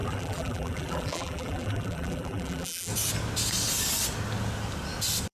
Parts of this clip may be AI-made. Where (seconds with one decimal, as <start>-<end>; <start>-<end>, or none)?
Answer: 0.0-2.9

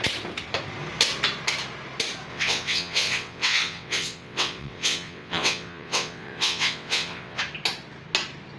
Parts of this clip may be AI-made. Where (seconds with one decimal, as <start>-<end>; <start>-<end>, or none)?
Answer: 2.3-7.4

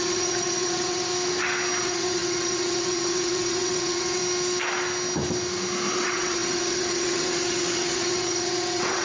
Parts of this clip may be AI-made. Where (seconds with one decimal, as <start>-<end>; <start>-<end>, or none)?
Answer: 0.0-1.1; 1.8-4.2; 5.9-9.0

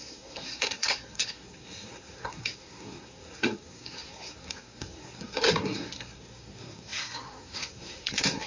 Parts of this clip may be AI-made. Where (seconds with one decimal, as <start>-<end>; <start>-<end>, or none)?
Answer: 0.0-8.5

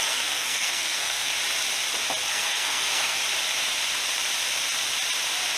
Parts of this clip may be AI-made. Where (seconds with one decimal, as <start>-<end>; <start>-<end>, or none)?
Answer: 0.0-1.3; 2.3-3.2

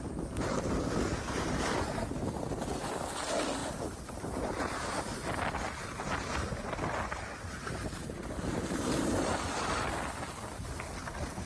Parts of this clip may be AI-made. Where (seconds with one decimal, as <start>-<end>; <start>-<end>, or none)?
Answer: 5.8-8.9

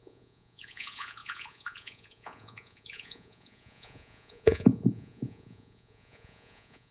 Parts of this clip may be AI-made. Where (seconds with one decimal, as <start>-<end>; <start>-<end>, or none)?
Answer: 0.0-6.9